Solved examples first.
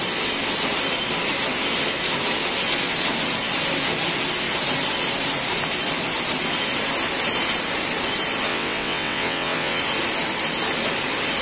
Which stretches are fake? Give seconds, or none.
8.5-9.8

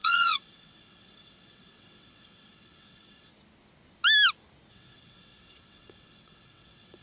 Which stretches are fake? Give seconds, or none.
0.0-3.3; 4.7-7.0